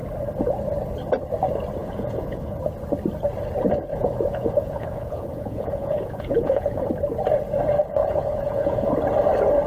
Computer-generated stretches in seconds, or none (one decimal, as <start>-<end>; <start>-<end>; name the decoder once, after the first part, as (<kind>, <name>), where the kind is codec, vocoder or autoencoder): 1.8-2.6 (vocoder, Vocos); 3.9-6.8; 8.0-8.9